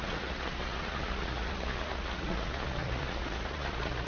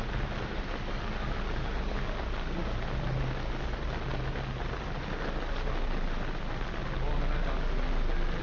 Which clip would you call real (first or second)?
second